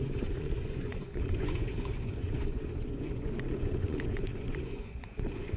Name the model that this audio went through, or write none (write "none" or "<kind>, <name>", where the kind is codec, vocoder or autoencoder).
vocoder, Vocos